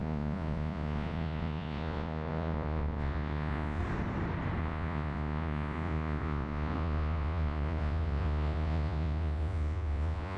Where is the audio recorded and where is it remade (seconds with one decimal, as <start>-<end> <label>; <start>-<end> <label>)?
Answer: 0.0-3.8 remade; 3.8-4.6 recorded; 4.6-10.4 remade